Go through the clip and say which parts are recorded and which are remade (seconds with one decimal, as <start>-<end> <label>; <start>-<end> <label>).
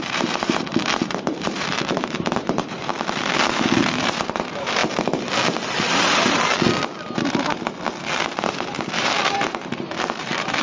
0.0-2.9 remade; 2.9-3.8 recorded; 3.8-4.8 remade; 4.8-8.4 recorded; 8.4-10.6 remade